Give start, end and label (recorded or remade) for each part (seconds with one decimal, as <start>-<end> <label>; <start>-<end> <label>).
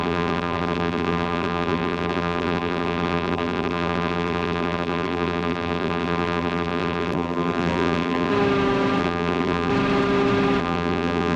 0.0-8.3 remade; 8.3-9.0 recorded; 9.0-9.7 remade; 9.7-10.6 recorded; 10.6-11.4 remade